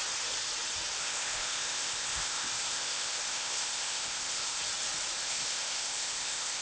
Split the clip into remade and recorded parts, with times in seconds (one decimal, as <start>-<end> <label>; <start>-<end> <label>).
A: 0.0-1.0 recorded; 1.0-4.6 remade; 4.6-5.2 recorded; 5.2-6.6 remade